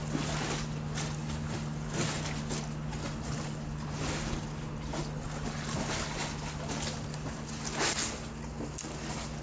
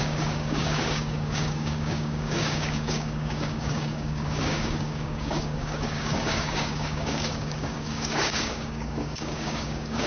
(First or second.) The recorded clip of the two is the first